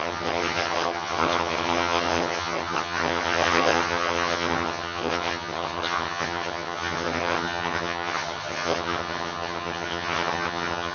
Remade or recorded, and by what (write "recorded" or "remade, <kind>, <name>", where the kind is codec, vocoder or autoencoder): remade, vocoder, HiFi-GAN